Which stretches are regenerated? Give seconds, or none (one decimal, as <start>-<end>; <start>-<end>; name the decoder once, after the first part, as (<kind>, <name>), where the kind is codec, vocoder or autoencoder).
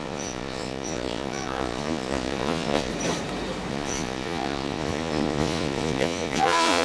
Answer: 0.0-2.9 (vocoder, Vocos); 3.7-6.8